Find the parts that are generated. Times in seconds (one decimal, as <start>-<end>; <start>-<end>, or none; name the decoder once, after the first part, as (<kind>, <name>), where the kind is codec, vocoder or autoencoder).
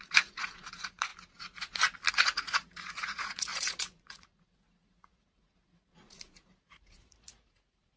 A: 0.0-1.1 (vocoder, Vocos); 2.1-8.0